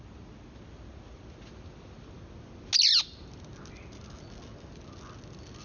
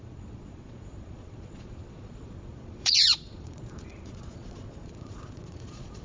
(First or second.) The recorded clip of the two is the first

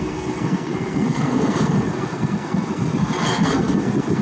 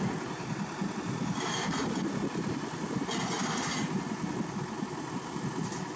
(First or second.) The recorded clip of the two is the second